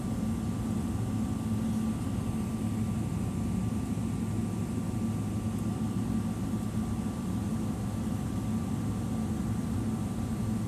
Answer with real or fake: real